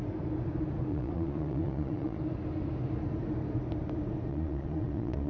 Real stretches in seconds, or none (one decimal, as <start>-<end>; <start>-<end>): 0.0-0.9; 2.2-4.3

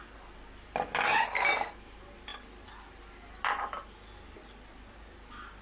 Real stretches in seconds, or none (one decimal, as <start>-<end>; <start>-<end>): 0.0-5.6